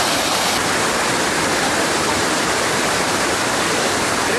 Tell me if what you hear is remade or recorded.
recorded